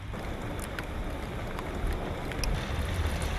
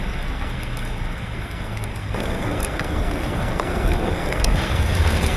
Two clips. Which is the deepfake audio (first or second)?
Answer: second